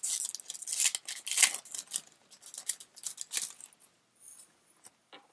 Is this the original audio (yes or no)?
yes